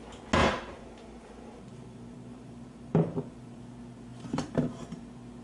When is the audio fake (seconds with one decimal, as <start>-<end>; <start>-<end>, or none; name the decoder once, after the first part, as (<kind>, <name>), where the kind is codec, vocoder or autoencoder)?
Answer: 0.4-3.6 (vocoder, BigVGAN v2); 4.1-5.0